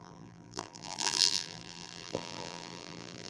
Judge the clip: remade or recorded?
remade